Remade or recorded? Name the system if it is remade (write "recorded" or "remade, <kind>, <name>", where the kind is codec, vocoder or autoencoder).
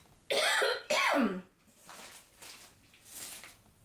recorded